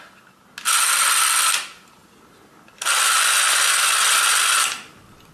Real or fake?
real